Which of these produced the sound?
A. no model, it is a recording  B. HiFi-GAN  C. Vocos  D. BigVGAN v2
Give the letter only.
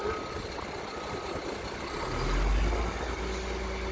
A